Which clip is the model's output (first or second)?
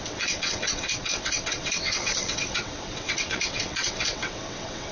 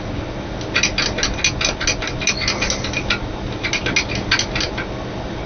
first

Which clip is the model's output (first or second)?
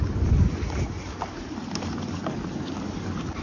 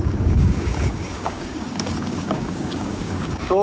second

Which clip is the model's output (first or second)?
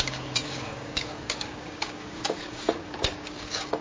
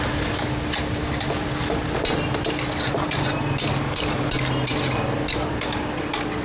first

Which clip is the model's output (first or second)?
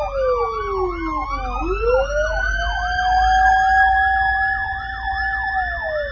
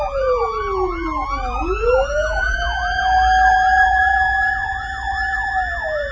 second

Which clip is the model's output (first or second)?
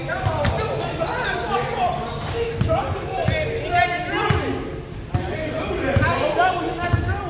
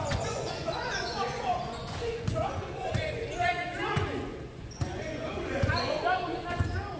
second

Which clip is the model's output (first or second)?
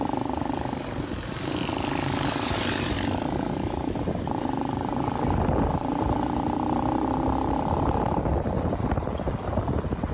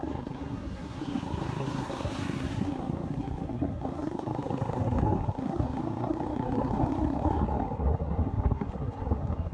second